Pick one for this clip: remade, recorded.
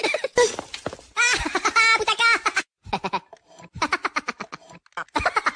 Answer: recorded